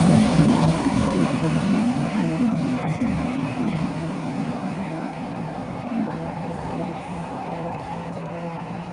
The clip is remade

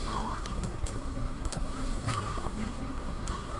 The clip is remade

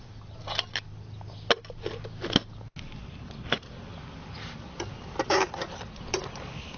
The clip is recorded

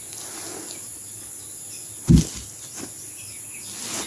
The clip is recorded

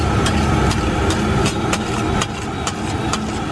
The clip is recorded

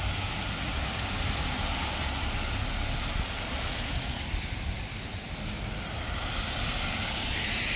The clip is recorded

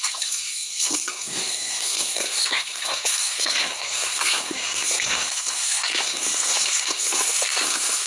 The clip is remade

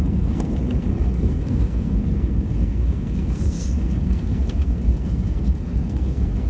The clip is remade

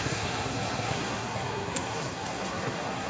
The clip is remade